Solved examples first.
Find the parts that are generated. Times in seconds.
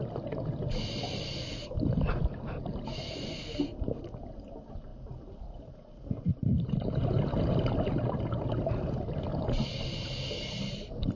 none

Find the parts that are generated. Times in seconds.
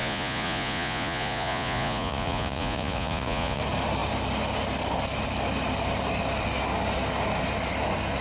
0.0-3.6 (vocoder, Vocos)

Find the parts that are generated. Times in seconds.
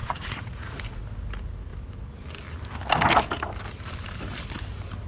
0.0-1.0 (vocoder, Vocos)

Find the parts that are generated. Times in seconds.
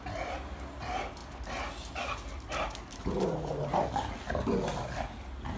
none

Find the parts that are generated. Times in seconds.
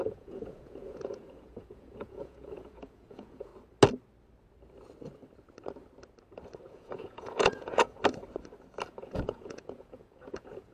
0.0-3.5 (vocoder, Vocos); 6.7-8.0; 9.0-10.7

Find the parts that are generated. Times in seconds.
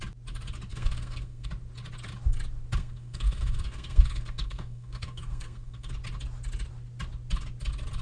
0.7-1.5 (codec, SNAC); 2.8-5.9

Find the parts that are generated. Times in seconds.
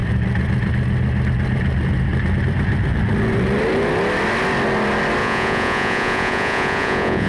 5.2-7.3 (vocoder, Vocos)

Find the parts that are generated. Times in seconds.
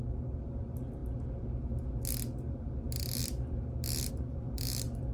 0.0-1.0 (vocoder, BigVGAN v2); 4.1-5.1